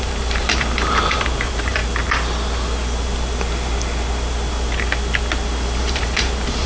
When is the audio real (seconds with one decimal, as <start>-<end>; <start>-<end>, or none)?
1.8-5.8